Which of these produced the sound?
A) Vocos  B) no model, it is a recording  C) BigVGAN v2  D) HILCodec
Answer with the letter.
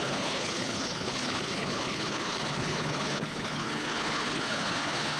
D